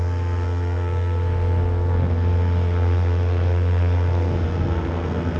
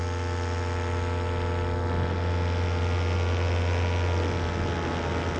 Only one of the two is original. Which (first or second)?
second